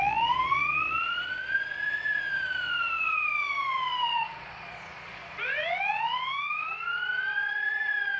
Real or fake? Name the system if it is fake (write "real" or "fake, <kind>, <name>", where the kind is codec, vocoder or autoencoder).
fake, vocoder, Vocos